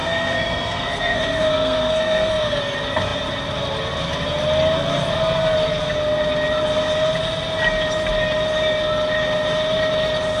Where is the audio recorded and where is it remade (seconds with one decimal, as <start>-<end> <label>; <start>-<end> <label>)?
0.0-2.6 remade; 2.6-10.4 recorded